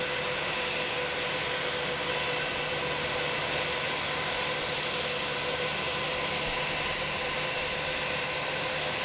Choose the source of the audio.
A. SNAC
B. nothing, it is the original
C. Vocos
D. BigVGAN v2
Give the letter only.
B